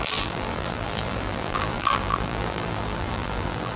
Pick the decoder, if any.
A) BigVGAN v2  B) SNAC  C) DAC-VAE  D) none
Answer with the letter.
A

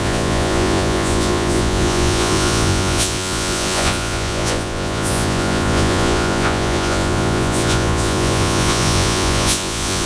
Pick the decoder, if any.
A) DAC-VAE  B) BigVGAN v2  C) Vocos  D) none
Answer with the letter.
C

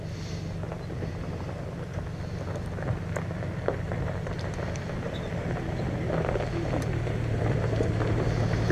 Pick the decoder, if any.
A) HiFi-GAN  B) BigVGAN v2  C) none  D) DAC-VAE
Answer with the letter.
C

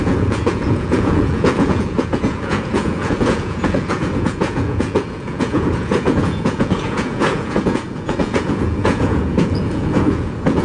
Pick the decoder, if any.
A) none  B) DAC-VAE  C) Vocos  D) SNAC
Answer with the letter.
C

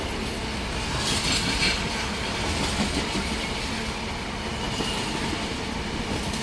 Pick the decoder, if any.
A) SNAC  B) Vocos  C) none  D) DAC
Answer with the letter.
C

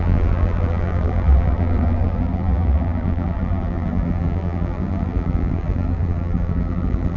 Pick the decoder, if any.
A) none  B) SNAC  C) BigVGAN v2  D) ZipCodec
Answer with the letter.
C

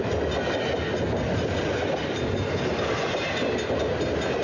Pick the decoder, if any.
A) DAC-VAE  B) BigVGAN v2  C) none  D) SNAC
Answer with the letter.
C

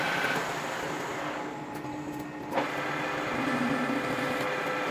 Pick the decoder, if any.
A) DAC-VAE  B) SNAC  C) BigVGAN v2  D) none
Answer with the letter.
D